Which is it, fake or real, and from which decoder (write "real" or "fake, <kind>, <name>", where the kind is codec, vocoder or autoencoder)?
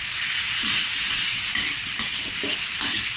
real